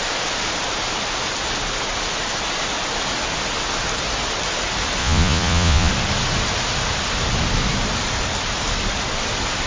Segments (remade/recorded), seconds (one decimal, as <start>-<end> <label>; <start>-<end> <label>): 0.0-5.0 recorded; 5.0-5.9 remade; 5.9-9.7 recorded